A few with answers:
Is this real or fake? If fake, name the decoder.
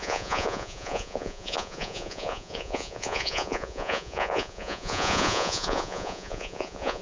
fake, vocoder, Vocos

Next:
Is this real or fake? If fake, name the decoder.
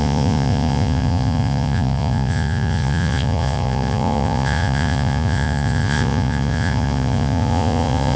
fake, vocoder, Vocos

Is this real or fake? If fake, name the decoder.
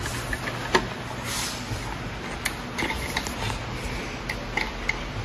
real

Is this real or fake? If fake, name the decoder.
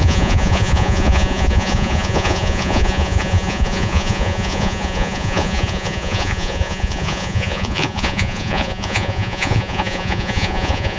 fake, vocoder, Vocos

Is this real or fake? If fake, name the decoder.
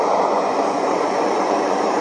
fake, vocoder, Vocos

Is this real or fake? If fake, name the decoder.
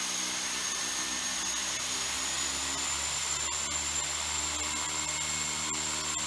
real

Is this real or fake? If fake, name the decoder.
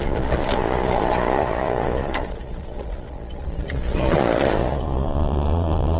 fake, vocoder, Vocos